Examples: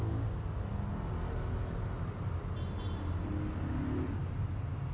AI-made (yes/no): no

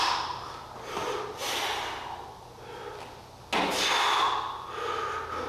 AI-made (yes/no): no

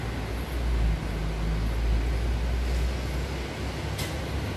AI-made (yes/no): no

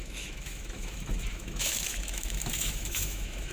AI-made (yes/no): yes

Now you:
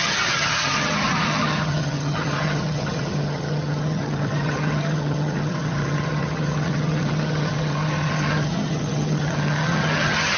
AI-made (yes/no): yes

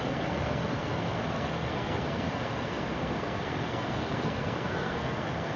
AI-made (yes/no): yes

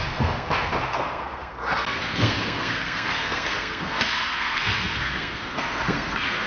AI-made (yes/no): yes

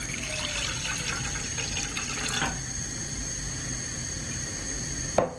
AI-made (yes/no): no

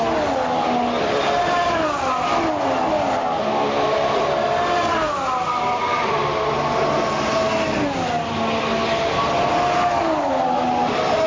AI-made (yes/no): no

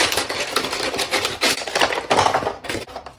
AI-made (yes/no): yes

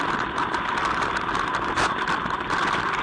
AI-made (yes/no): no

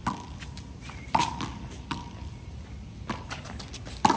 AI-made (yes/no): no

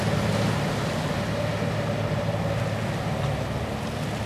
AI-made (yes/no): no